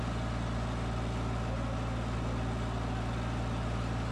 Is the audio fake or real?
real